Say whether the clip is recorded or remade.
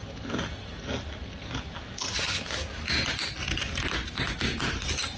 recorded